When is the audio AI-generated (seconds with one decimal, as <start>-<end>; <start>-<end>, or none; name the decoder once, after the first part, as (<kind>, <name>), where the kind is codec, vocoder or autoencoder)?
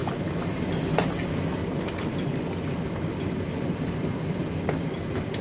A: none